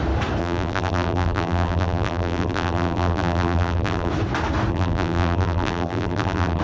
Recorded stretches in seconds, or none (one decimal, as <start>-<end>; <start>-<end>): 0.0-0.4; 4.1-4.7